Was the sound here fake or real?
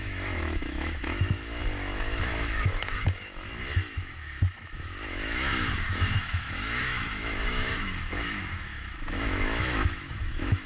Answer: fake